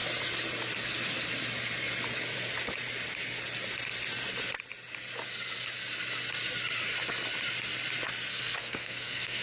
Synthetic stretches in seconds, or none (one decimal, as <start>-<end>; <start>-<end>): 8.3-9.4